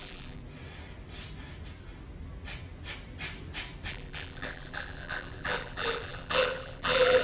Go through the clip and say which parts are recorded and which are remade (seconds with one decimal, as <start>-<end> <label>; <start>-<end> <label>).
0.0-0.4 remade; 0.4-3.9 recorded; 3.9-7.2 remade